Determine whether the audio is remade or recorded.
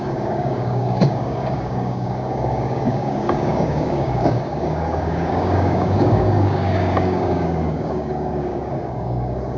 remade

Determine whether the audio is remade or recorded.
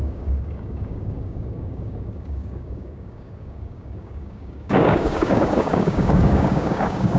remade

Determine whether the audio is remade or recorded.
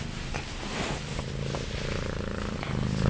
recorded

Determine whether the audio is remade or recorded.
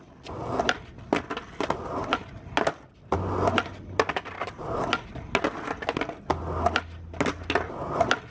recorded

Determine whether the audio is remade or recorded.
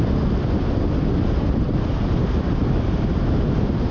recorded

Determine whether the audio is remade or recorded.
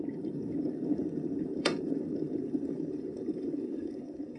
remade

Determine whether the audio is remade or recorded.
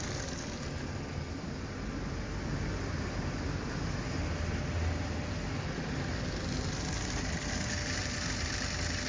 recorded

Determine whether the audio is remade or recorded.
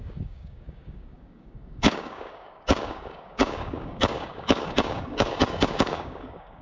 remade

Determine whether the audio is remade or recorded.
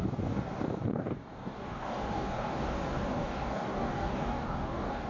remade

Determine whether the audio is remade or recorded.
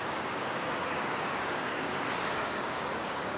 remade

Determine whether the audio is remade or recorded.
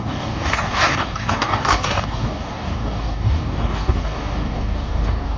remade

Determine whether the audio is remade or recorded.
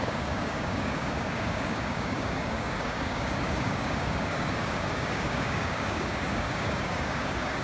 remade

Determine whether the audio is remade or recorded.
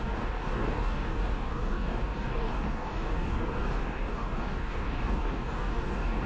remade